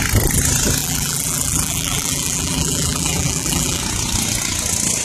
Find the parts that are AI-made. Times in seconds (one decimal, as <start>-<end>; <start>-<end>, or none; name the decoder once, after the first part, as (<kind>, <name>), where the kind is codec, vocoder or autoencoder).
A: 0.8-3.8 (vocoder, BigVGAN v2)